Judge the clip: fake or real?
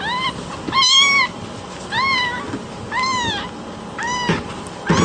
real